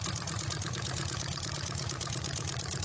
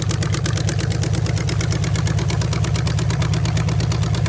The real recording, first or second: second